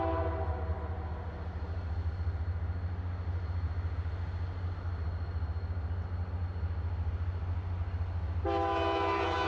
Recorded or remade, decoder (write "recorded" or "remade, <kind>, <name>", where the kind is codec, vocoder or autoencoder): recorded